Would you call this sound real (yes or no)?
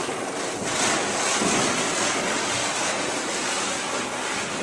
yes